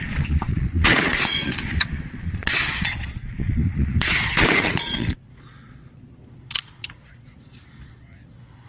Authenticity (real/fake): fake